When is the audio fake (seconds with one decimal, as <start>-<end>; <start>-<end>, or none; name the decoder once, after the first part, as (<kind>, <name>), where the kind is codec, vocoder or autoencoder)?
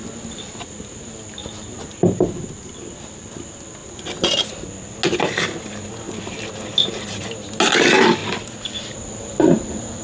none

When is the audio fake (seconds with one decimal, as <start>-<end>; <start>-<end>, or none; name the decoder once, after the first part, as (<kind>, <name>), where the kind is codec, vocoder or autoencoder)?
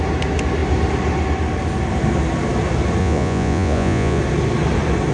3.0-4.2 (vocoder, Vocos)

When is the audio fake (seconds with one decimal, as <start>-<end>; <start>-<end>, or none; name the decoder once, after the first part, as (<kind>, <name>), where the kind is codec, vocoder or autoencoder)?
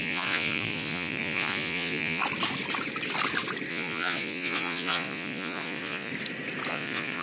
0.0-2.2 (vocoder, Vocos); 3.7-6.1; 6.7-7.2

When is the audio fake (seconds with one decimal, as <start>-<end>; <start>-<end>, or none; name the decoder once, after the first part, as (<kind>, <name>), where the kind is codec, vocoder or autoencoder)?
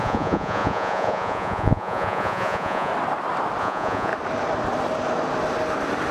0.0-2.9 (vocoder, Vocos); 3.6-4.1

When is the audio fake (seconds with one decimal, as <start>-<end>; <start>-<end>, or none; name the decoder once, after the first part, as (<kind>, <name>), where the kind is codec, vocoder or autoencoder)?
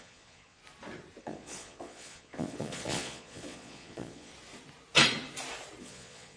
0.0-0.6 (vocoder, Vocos); 1.2-4.3; 5.8-6.4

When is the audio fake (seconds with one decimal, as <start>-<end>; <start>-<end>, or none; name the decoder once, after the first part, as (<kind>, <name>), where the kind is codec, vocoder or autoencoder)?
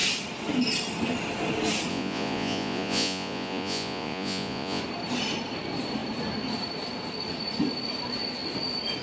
1.9-4.8 (vocoder, Vocos)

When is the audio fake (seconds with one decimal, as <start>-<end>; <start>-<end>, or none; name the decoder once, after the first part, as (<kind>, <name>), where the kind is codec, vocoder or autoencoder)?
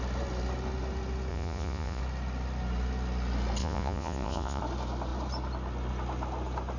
1.3-2.0 (vocoder, Vocos); 3.6-4.6